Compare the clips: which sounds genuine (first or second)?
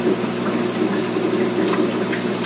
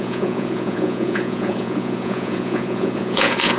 first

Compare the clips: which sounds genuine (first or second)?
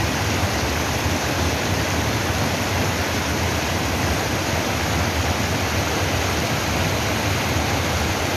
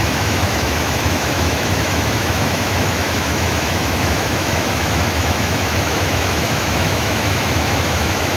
first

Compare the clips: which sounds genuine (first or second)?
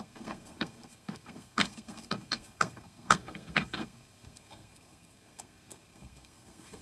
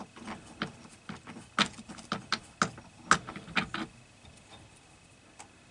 second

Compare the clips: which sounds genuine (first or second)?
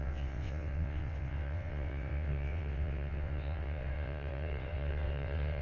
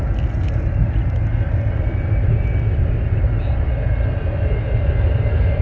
second